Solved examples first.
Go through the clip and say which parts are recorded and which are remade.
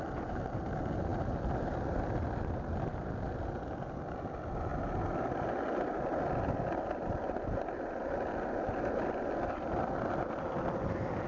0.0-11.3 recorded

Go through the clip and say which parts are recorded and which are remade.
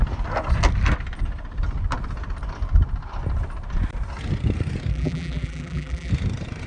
0.0-4.9 recorded; 4.9-6.1 remade; 6.1-6.7 recorded